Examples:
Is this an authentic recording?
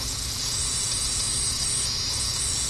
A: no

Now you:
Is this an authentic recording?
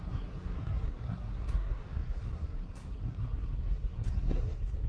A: no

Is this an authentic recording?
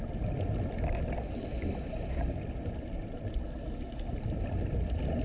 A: yes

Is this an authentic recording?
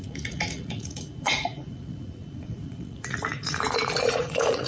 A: no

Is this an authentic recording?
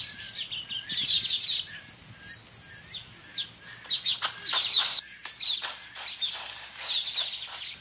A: yes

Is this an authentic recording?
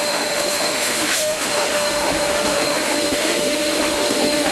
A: no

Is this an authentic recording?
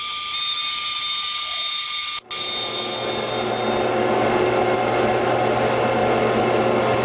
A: yes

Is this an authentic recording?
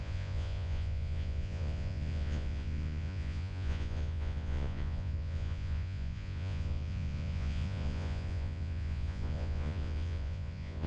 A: no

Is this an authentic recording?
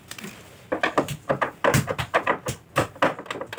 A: yes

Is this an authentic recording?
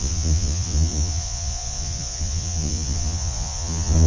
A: no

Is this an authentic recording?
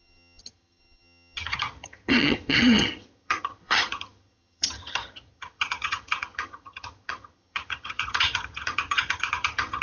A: no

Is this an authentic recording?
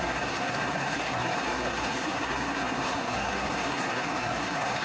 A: no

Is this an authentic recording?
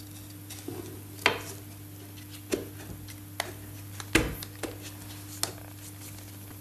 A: yes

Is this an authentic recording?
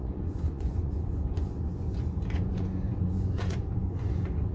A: no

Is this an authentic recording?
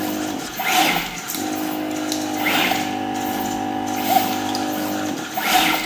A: yes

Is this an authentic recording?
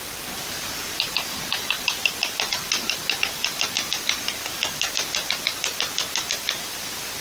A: no